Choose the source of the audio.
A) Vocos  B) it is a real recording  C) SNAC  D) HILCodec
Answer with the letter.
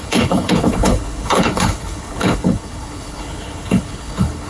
D